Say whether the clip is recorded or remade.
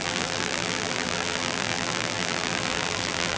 remade